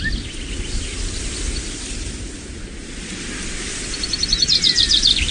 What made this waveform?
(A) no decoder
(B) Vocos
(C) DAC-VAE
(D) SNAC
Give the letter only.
A